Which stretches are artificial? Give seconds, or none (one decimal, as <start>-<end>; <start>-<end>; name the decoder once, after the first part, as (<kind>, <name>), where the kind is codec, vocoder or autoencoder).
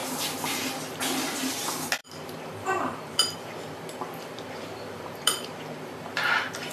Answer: 1.4-6.7 (vocoder, BigVGAN v2)